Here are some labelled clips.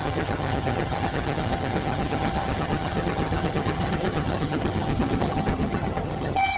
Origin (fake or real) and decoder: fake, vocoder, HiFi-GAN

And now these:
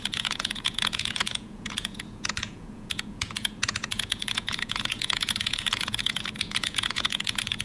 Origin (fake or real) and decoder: fake, vocoder, Vocos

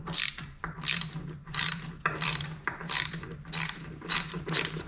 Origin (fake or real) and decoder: fake, vocoder, BigVGAN v2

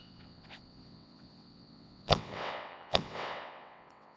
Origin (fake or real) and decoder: fake, vocoder, WaveNeXt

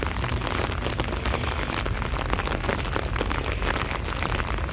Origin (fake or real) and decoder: real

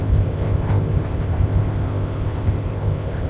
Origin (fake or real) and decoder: fake, codec, ZipCodec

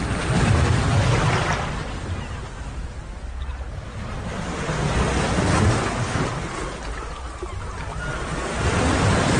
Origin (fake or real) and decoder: real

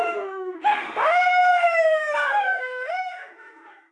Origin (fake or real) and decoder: fake, autoencoder, DAC-VAE